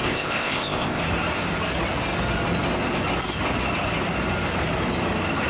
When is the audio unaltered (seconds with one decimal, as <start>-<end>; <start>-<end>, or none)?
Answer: 1.0-5.5